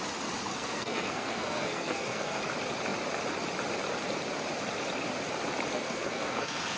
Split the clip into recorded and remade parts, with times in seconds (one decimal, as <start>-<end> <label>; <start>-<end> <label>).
0.0-0.5 recorded; 0.5-2.4 remade; 2.4-5.7 recorded; 5.7-6.8 remade